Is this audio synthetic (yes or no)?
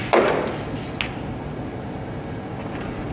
no